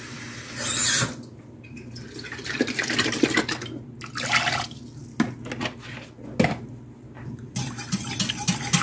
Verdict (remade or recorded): recorded